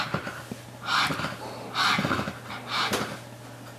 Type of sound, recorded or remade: recorded